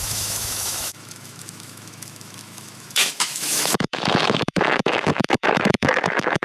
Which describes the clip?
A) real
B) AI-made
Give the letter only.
B